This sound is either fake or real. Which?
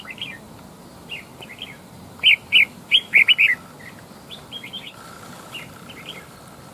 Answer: real